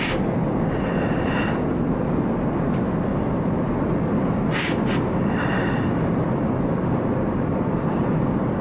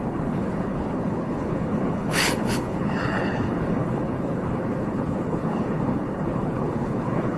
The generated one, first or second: second